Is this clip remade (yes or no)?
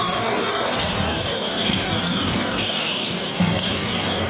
yes